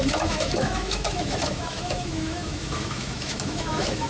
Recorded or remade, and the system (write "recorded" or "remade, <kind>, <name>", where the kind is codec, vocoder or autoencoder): remade, autoencoder, DAC-VAE